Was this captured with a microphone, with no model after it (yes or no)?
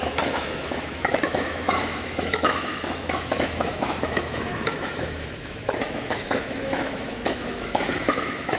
no